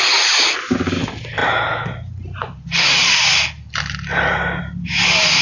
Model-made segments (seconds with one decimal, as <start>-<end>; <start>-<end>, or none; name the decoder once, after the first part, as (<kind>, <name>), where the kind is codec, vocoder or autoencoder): none